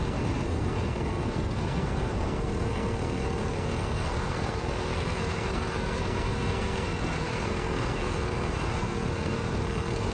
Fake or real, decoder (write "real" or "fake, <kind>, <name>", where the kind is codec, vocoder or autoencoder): fake, codec, SNAC